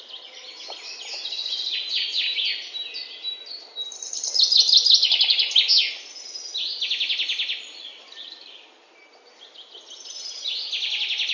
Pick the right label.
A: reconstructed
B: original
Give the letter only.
B